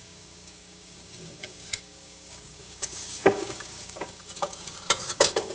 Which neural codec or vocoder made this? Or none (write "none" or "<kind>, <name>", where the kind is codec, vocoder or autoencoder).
codec, DAC